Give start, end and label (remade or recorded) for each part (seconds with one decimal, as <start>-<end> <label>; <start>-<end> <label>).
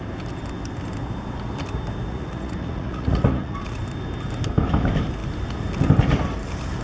0.0-2.1 recorded; 2.1-3.8 remade; 3.8-6.8 recorded